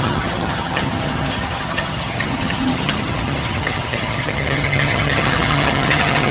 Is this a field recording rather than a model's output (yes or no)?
no